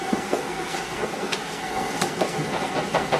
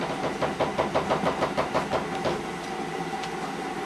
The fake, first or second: first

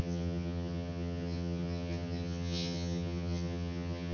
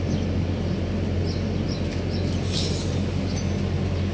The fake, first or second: first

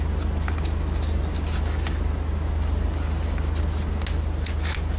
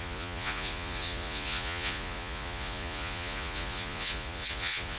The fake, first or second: second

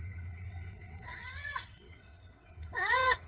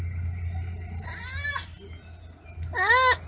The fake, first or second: first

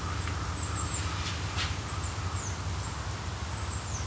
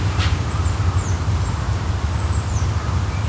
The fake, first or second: second